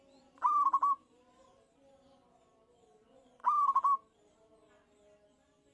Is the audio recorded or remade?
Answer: recorded